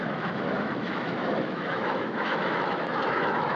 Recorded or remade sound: remade